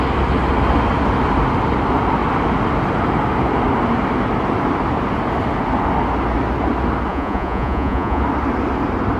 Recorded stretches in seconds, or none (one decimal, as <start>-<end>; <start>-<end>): 0.0-7.1; 8.2-9.2